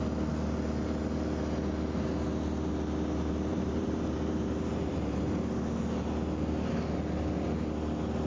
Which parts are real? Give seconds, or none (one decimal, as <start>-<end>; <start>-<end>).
0.0-3.5; 5.5-8.3